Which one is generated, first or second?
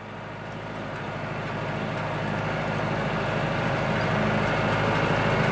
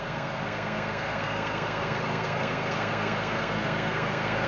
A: second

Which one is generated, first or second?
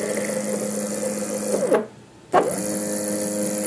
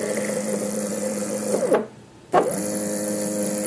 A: second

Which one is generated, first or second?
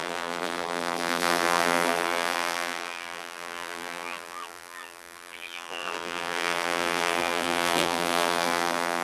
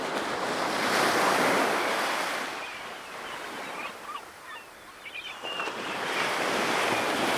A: first